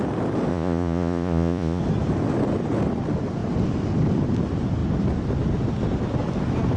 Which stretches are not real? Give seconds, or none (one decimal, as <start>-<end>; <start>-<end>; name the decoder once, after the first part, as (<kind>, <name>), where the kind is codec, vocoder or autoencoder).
0.5-1.8 (vocoder, Vocos)